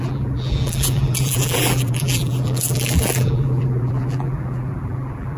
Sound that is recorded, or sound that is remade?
remade